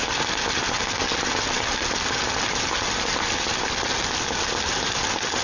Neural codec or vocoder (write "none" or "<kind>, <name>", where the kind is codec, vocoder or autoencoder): none